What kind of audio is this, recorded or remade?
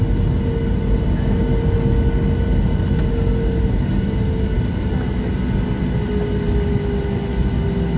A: recorded